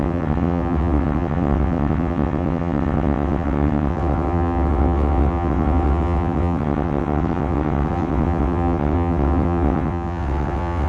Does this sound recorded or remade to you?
remade